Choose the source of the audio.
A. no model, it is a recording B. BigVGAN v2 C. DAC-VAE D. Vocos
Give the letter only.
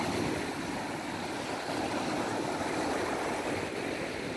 A